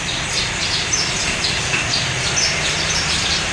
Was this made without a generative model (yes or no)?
no